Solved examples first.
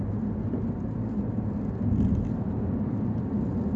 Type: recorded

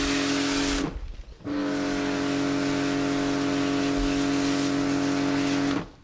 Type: recorded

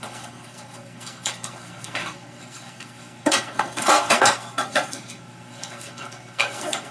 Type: remade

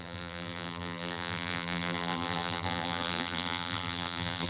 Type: remade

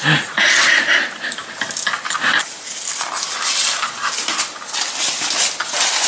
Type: recorded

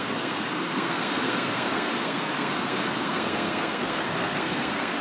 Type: remade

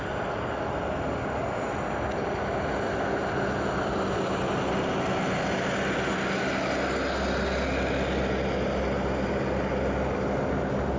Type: recorded